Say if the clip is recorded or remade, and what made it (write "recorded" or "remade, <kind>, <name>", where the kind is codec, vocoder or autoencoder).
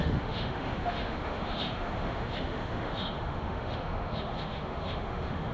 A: remade, autoencoder, DAC-VAE